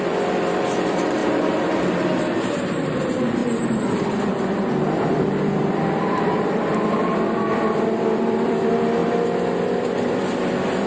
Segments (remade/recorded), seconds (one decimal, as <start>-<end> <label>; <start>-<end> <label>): 0.0-10.9 remade